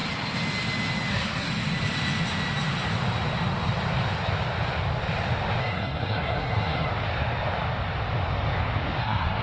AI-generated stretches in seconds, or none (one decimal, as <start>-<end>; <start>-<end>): 1.1-1.5; 5.6-6.9; 9.0-9.4